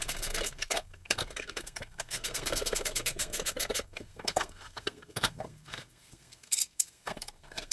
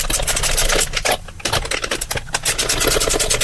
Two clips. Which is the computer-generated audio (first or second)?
first